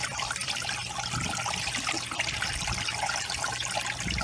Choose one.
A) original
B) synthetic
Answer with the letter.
B